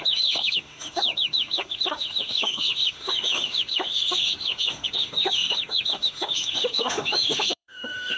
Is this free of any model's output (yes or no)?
no